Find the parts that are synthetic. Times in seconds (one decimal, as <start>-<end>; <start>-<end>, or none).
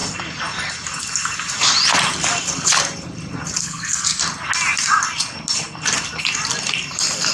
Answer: 3.6-4.2